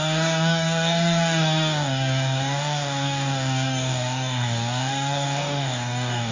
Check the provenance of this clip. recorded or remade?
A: remade